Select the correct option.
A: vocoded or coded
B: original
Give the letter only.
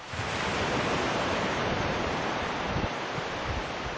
A